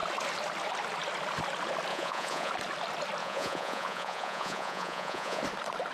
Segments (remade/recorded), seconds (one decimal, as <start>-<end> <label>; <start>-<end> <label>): 0.0-1.9 recorded; 1.9-2.5 remade; 2.5-3.2 recorded; 3.2-5.4 remade; 5.4-5.9 recorded